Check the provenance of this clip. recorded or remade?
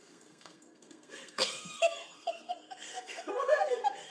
remade